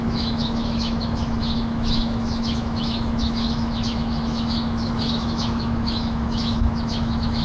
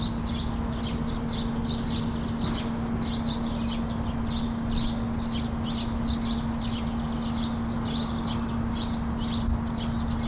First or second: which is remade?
first